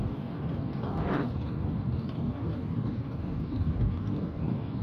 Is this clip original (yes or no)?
no